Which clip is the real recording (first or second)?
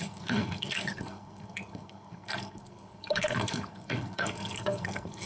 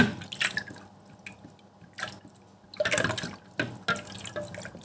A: second